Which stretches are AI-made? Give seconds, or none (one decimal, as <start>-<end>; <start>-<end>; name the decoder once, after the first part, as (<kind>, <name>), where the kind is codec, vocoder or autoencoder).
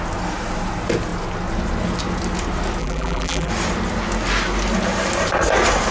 2.8-3.5 (vocoder, BigVGAN v2)